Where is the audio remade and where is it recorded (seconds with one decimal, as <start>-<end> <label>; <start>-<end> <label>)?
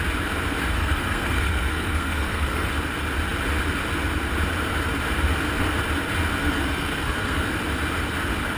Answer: 0.0-0.8 recorded; 0.8-2.7 remade; 2.7-6.4 recorded; 6.4-7.4 remade; 7.4-8.6 recorded